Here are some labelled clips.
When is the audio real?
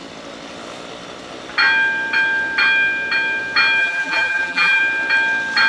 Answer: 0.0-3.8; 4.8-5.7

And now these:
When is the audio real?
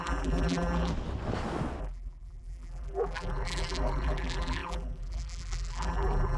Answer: 0.9-1.8